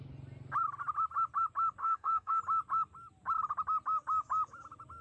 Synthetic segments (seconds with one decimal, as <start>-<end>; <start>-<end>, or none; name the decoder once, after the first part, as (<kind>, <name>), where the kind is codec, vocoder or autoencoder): 1.8-2.4 (codec, DAC)